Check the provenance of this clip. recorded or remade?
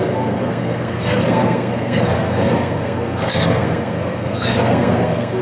remade